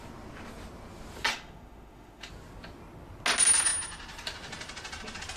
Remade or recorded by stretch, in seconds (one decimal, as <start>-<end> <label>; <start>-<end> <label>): 0.0-1.3 recorded; 1.3-2.3 remade; 2.3-5.4 recorded

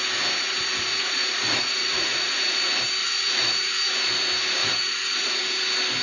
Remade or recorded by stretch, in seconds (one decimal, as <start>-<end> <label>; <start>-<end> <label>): 0.0-0.9 recorded; 0.9-2.6 remade; 2.6-3.0 recorded; 3.0-3.8 remade; 3.8-4.6 recorded; 4.6-5.4 remade; 5.4-6.0 recorded

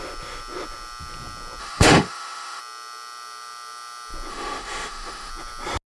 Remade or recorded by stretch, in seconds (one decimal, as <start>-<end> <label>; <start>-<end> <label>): 0.0-1.6 recorded; 1.6-2.6 remade; 2.6-4.3 recorded; 4.3-5.3 remade; 5.3-5.9 recorded